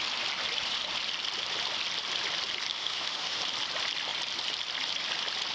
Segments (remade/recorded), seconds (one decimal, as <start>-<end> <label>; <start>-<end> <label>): 0.0-2.7 recorded; 2.7-3.4 remade; 3.4-5.5 recorded